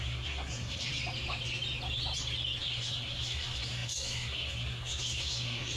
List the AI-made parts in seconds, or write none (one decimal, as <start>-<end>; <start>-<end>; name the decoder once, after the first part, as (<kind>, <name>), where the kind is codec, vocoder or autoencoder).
0.0-0.9 (codec, SNAC); 2.6-5.8